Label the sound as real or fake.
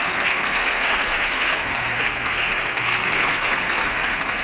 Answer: fake